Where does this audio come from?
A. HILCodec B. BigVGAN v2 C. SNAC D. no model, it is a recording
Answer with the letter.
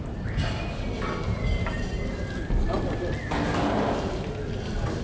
D